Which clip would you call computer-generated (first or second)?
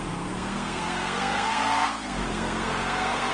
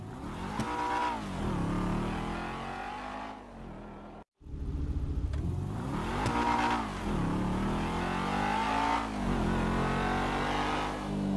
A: first